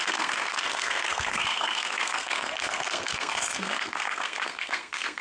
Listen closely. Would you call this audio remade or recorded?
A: remade